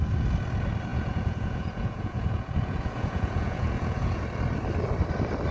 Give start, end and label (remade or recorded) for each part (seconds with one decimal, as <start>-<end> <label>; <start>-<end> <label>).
0.0-0.9 recorded; 0.9-4.2 remade; 4.2-5.5 recorded